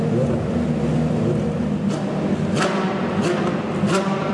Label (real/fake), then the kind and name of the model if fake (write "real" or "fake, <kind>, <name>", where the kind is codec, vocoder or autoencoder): real